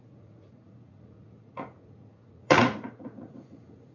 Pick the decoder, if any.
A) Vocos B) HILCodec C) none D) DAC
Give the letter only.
A